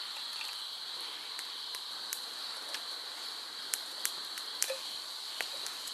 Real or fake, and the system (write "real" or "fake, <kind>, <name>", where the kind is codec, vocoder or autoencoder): fake, vocoder, BigVGAN v2